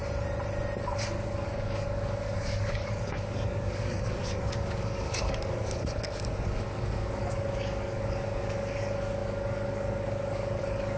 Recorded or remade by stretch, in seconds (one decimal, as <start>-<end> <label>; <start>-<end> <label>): 0.0-0.8 recorded; 0.8-11.0 remade